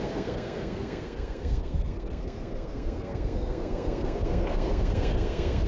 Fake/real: fake